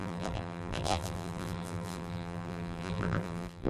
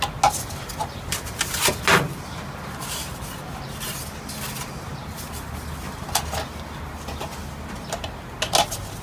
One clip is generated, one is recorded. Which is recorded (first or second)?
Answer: second